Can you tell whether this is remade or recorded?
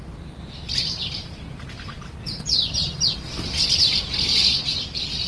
recorded